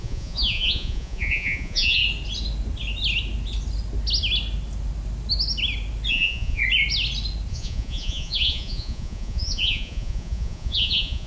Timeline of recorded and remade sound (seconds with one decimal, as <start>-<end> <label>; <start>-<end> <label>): 0.0-2.0 remade; 2.0-6.1 recorded; 6.1-6.6 remade; 6.6-7.5 recorded; 7.5-11.3 remade